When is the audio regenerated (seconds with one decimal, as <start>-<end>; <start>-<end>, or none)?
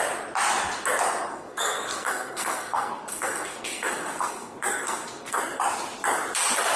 1.3-5.4